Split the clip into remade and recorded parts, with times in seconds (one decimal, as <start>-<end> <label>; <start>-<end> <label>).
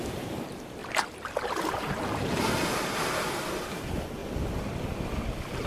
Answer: 0.0-0.8 remade; 0.8-1.7 recorded; 1.7-4.2 remade; 4.2-5.2 recorded; 5.2-5.7 remade